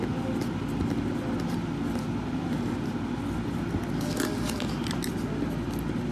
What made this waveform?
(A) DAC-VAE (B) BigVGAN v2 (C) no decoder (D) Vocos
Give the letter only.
C